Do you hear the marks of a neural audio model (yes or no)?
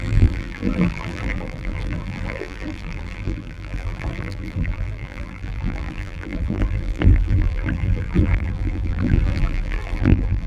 yes